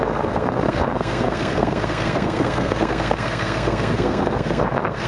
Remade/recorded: remade